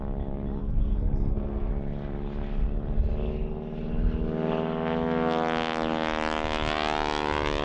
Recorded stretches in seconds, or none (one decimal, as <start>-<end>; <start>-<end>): 0.0-0.6; 1.7-7.6